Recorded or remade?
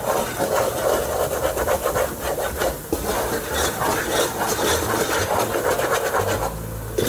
recorded